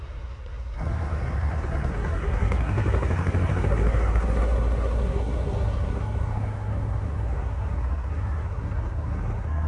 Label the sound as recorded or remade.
remade